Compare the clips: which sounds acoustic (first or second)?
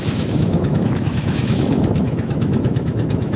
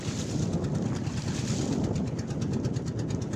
second